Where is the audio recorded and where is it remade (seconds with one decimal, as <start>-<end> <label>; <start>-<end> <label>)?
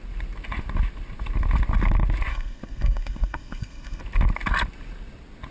0.0-2.3 recorded; 2.3-4.0 remade; 4.0-5.5 recorded